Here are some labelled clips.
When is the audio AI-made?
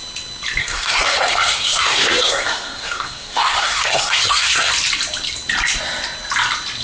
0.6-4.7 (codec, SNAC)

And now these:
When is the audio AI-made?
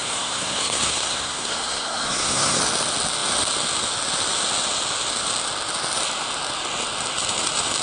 0.0-2.6 (codec, SNAC)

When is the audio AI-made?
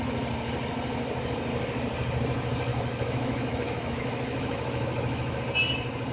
2.7-5.4 (autoencoder, DAC-VAE)